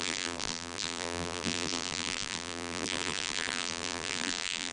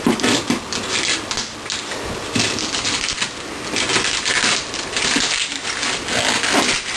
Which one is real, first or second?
second